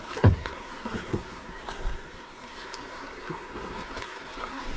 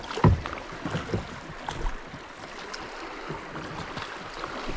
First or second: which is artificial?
first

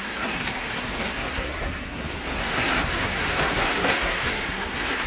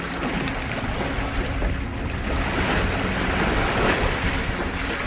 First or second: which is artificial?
first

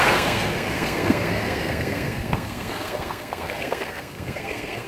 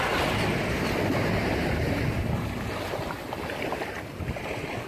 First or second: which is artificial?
first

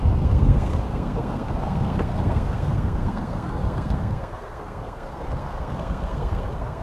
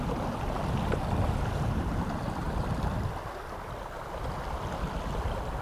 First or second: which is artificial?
first